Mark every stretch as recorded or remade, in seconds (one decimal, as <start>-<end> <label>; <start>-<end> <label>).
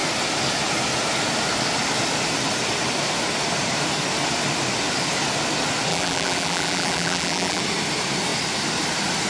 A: 0.0-5.9 recorded; 5.9-7.6 remade; 7.6-9.3 recorded